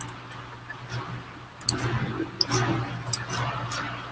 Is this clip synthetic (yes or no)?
no